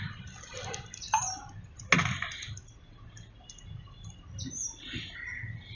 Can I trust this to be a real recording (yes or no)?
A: yes